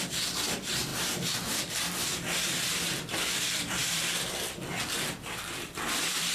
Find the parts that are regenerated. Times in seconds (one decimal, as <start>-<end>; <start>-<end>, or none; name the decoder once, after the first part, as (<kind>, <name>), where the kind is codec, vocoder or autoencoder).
0.0-0.9 (vocoder, BigVGAN v2); 1.6-2.1; 2.7-6.3